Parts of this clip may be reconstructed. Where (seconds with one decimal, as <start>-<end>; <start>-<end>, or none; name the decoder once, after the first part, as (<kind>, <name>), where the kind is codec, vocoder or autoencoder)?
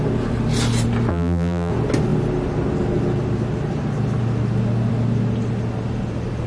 1.1-1.7 (vocoder, BigVGAN v2)